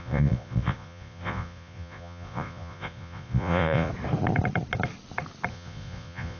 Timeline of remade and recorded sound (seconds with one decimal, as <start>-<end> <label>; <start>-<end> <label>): 0.0-3.9 remade; 3.9-5.5 recorded; 5.5-6.4 remade